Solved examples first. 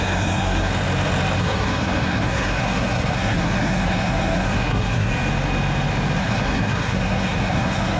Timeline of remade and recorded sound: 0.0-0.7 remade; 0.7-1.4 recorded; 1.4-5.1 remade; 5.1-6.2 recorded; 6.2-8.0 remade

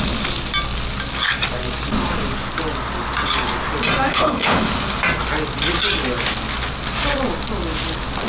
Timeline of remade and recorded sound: 0.0-4.1 recorded; 4.1-4.7 remade; 4.7-8.3 recorded

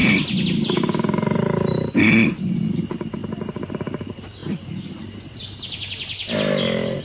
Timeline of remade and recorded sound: 0.0-7.0 recorded

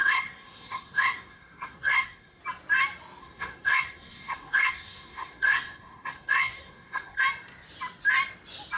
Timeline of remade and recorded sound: 0.0-2.4 remade; 2.4-3.2 recorded; 3.2-7.2 remade; 7.2-8.8 recorded

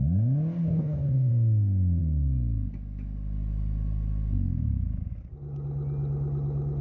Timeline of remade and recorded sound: 0.0-0.7 recorded; 0.7-1.3 remade; 1.3-6.8 recorded

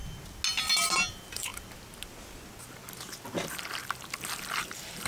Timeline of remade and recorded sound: 0.0-1.1 recorded; 1.1-1.5 remade; 1.5-4.6 recorded; 4.6-5.1 remade